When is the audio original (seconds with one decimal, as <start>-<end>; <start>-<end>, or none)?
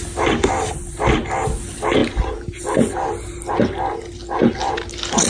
0.0-5.3